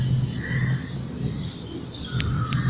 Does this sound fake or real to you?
real